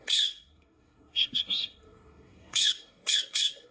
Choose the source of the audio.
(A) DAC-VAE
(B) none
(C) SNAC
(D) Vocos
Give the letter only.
C